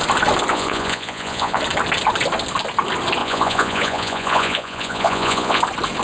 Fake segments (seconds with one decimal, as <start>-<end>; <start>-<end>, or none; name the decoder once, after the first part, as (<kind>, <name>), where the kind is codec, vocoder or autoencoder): 0.5-1.6 (vocoder, Vocos); 3.2-5.6